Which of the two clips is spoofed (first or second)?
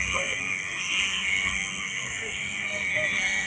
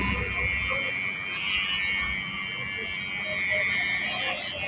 first